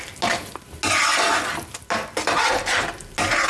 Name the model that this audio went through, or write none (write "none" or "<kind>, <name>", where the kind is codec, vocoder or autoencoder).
none